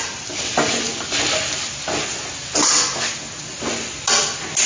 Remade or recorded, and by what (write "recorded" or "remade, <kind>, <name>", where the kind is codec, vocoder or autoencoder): recorded